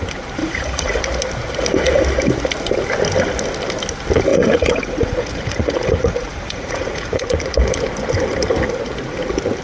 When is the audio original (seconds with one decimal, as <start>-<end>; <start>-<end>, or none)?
0.0-0.4; 1.0-4.3; 7.2-9.6